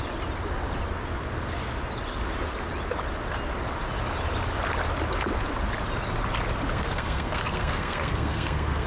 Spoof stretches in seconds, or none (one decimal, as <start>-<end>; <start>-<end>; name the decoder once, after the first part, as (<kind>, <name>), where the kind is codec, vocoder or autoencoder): 6.7-8.9 (codec, SNAC)